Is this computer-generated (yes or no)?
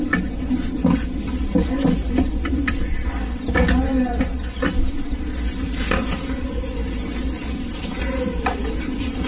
no